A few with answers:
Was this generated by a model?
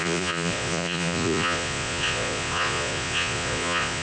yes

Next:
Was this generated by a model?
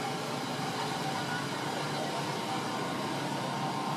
no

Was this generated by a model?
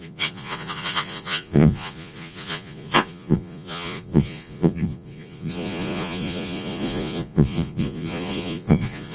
yes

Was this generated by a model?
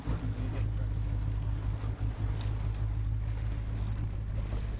no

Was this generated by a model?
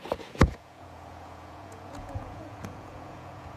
yes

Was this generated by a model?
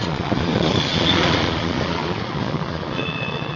yes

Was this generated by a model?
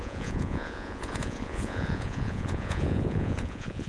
yes